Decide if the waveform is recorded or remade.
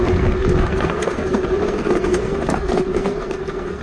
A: remade